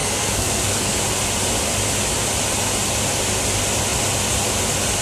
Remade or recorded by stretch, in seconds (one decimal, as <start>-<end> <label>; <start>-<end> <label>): 0.0-1.0 remade; 1.0-5.0 recorded